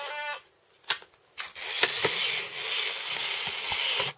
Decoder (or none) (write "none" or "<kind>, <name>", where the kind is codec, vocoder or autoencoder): none